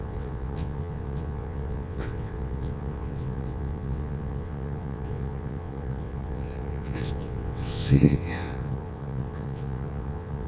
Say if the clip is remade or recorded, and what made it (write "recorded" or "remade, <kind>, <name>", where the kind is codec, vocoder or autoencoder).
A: remade, vocoder, WaveNeXt